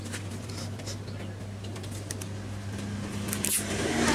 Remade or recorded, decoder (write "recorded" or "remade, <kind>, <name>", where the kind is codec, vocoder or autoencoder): recorded